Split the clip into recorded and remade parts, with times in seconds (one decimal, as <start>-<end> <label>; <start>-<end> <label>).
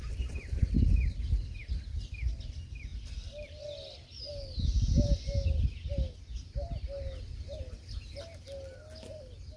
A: 0.0-9.6 recorded